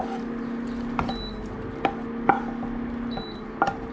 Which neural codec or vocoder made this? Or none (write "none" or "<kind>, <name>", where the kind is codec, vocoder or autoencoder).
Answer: none